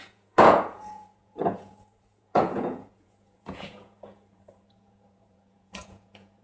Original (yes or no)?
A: no